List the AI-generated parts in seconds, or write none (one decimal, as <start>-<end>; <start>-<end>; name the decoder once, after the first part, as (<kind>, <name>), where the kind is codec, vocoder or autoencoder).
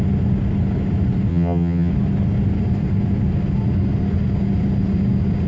1.3-1.9 (vocoder, HiFi-GAN)